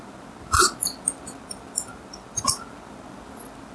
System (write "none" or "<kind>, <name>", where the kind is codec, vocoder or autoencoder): none